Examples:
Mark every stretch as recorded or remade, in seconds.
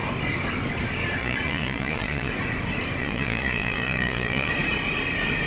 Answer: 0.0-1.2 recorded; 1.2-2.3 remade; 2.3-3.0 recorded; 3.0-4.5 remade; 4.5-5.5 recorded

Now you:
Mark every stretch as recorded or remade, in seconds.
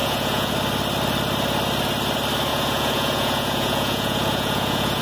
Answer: 0.0-0.5 remade; 0.5-2.5 recorded; 2.5-5.0 remade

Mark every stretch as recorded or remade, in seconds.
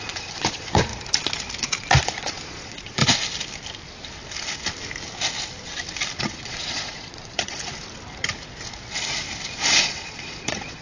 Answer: 0.0-0.9 remade; 0.9-2.0 recorded; 2.0-3.0 remade; 3.0-6.2 recorded; 6.2-7.7 remade; 7.7-9.8 recorded; 9.8-10.8 remade